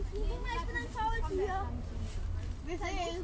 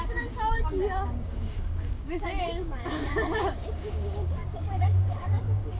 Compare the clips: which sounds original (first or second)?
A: first